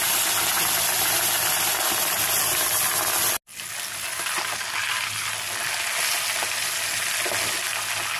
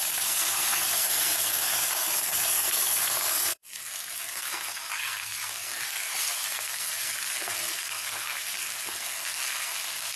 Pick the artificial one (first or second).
second